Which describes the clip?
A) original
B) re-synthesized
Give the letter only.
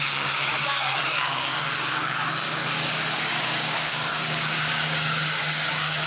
B